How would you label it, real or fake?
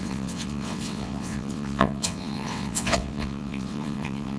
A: fake